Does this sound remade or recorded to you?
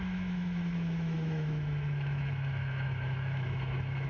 remade